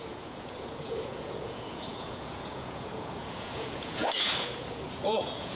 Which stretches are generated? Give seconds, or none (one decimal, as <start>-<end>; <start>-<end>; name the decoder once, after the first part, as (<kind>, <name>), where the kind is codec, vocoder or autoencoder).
0.0-5.5 (vocoder, Vocos)